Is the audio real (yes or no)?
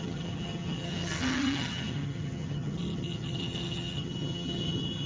no